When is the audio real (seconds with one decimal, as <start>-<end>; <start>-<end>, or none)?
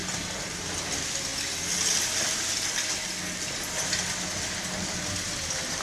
0.7-5.8